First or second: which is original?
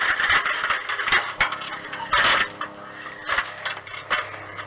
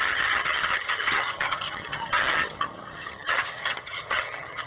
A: first